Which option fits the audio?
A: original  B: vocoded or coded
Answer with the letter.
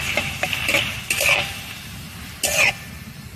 A